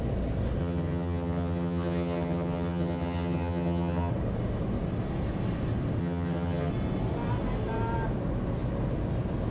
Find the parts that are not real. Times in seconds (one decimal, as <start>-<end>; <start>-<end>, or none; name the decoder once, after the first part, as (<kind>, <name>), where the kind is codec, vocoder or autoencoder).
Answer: 0.6-4.1 (vocoder, HiFi-GAN); 6.0-6.7